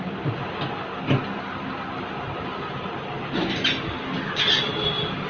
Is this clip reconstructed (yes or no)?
no